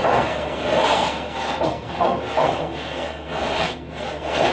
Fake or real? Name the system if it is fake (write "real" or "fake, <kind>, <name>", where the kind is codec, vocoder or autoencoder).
fake, codec, SNAC